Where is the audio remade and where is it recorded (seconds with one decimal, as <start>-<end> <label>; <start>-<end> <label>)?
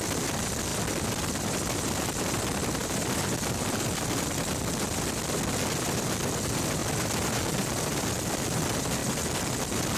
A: 0.0-0.7 recorded; 0.7-2.4 remade; 2.4-6.8 recorded; 6.8-8.0 remade; 8.0-10.0 recorded